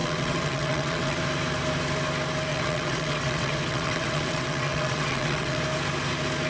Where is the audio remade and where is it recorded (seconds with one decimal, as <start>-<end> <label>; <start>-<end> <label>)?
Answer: 0.0-1.2 remade; 1.2-2.5 recorded; 2.5-5.6 remade; 5.6-6.5 recorded